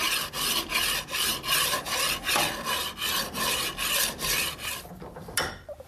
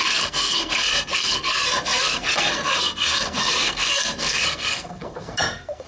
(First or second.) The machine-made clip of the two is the second